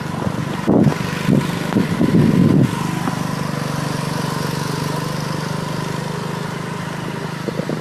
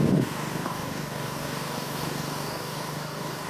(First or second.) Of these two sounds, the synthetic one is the second